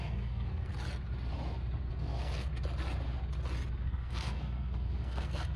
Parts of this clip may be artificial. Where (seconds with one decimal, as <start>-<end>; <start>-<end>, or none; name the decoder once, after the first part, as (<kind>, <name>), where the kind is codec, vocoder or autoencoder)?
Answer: 0.0-0.7 (codec, SNAC); 1.9-2.5; 3.8-5.6